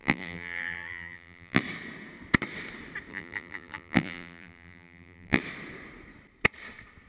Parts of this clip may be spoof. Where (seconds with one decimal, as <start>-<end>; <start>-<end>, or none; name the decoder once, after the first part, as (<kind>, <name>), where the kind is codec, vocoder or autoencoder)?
0.0-1.6 (vocoder, BigVGAN v2); 3.1-5.4